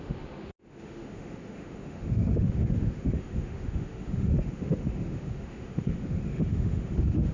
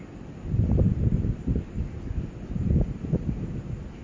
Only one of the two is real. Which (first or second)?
second